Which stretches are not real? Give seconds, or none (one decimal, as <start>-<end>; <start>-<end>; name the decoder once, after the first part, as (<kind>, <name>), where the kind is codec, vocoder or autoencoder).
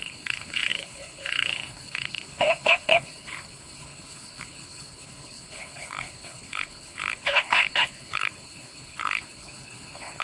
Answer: 0.0-10.2 (codec, HILCodec)